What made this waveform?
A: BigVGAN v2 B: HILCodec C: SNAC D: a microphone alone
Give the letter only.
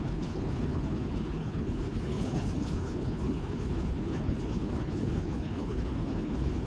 B